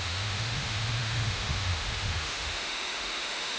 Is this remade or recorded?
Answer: remade